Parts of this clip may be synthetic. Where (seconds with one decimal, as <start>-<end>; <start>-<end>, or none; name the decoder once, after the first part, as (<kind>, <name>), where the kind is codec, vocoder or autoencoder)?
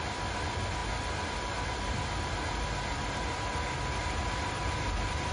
none